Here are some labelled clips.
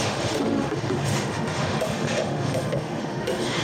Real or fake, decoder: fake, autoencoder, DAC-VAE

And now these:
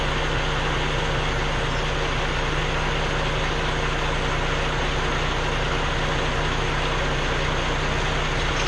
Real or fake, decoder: real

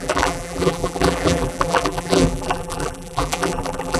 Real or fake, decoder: fake, vocoder, BigVGAN v2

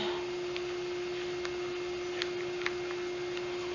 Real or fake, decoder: real